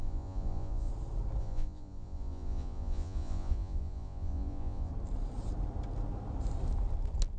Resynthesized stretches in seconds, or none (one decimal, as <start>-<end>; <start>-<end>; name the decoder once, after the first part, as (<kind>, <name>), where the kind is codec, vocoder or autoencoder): 0.0-0.9 (vocoder, Vocos); 1.4-4.9